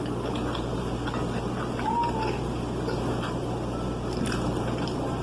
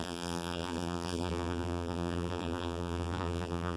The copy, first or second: second